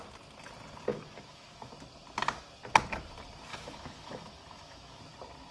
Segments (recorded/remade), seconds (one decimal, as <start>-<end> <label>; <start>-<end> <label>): 0.0-0.9 recorded; 0.9-1.7 remade; 1.7-3.5 recorded; 3.5-5.0 remade; 5.0-5.5 recorded